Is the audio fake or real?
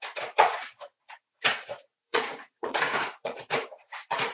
fake